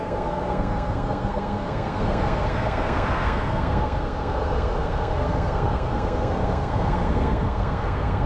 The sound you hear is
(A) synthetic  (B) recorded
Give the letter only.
A